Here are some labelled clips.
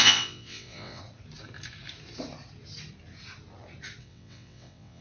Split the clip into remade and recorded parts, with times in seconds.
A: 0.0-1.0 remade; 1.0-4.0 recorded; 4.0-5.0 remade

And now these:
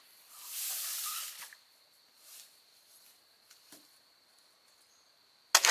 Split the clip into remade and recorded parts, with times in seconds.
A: 0.0-0.9 recorded; 0.9-2.9 remade; 2.9-5.7 recorded

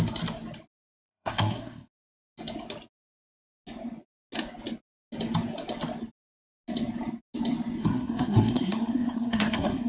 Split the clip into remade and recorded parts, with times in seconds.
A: 0.0-1.0 recorded; 1.0-2.1 remade; 2.1-7.8 recorded; 7.8-9.9 remade

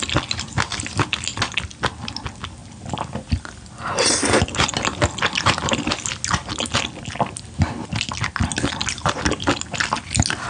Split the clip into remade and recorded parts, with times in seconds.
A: 0.0-10.5 recorded